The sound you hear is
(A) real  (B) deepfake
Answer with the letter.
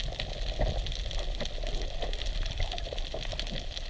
A